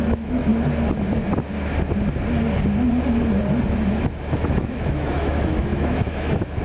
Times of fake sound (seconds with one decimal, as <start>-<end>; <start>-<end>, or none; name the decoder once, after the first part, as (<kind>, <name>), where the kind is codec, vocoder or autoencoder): 0.0-0.5 (autoencoder, DAC-VAE); 4.5-6.6